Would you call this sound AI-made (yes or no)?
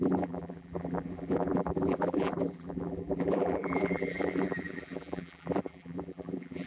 yes